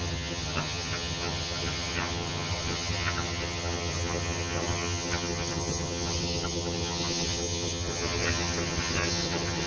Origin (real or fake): fake